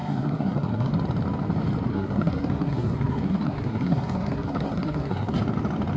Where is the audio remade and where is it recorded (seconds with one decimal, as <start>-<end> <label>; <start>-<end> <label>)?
0.0-0.9 remade; 0.9-1.9 recorded; 1.9-5.4 remade; 5.4-6.0 recorded